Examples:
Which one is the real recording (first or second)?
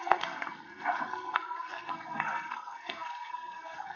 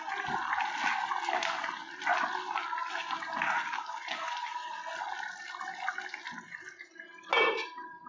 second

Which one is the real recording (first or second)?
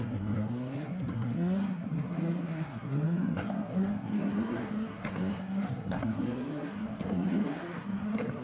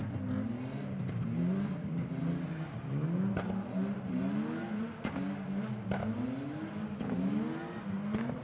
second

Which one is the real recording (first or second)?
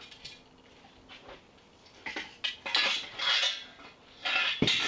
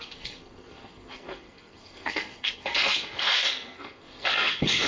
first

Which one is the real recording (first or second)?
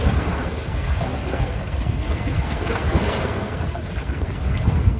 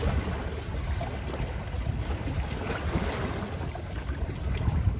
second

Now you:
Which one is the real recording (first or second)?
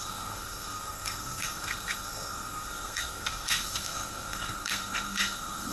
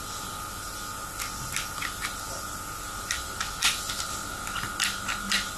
second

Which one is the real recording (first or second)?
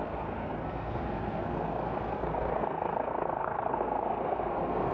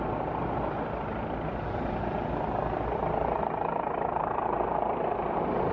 second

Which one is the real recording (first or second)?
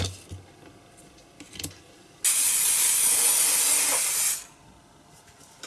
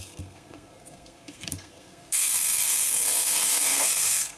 first